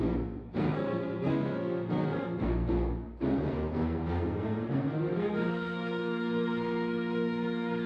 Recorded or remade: remade